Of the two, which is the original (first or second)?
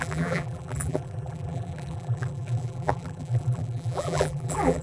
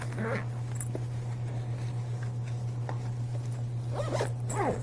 second